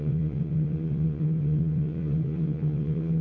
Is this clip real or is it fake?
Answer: fake